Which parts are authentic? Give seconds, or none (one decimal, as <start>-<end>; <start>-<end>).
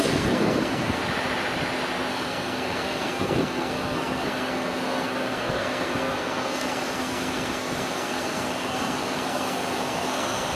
1.0-2.1